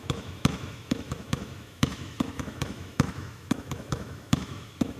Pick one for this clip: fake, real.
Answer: fake